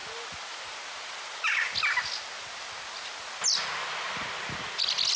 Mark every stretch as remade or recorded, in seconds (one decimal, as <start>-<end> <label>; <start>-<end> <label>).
0.0-5.2 recorded